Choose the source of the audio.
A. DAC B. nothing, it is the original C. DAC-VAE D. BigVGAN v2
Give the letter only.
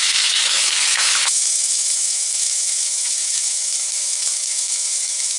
C